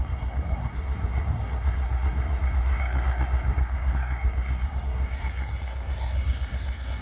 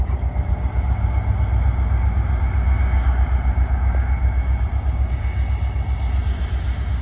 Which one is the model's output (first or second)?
first